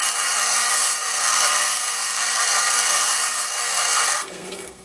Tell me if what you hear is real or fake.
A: fake